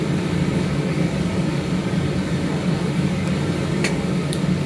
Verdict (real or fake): fake